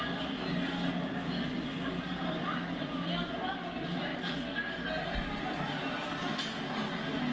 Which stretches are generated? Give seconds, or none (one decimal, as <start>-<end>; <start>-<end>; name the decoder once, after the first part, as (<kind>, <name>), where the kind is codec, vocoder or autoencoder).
none

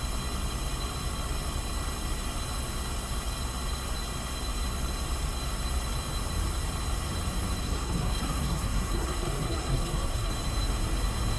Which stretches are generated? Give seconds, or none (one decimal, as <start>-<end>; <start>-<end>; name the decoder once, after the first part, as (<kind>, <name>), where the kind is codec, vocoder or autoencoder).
7.6-10.3 (codec, SNAC)

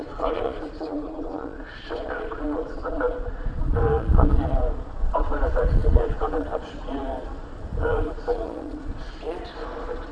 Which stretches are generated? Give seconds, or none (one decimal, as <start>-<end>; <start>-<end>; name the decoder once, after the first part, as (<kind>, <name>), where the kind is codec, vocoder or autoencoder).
0.0-10.1 (vocoder, Vocos)

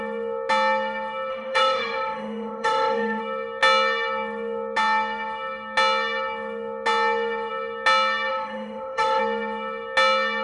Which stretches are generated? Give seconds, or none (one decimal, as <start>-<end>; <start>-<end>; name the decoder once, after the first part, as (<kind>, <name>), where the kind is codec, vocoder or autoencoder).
1.3-3.2 (autoencoder, DAC-VAE); 8.3-9.2

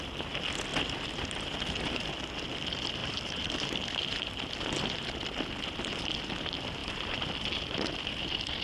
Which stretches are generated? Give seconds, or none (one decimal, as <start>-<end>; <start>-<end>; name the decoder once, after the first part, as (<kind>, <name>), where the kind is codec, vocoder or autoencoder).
0.7-2.0 (vocoder, BigVGAN v2); 3.0-5.6; 6.8-8.6

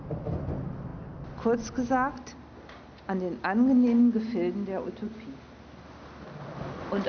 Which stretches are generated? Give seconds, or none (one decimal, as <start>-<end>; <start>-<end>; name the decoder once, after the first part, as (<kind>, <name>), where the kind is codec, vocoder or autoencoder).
none

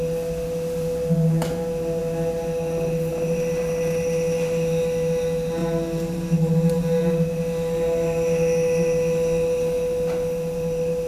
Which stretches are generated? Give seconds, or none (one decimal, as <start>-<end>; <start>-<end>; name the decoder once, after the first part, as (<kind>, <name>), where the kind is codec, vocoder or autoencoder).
none

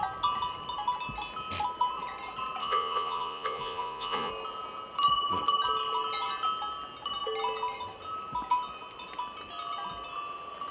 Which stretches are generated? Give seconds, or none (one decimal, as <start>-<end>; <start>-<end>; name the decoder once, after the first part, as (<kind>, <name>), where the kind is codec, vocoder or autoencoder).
2.6-4.3 (vocoder, Vocos)